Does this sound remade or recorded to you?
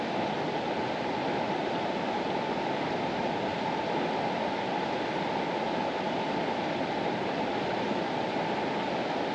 recorded